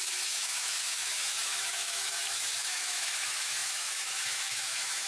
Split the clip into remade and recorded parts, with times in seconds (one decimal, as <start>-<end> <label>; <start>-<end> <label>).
0.0-5.1 remade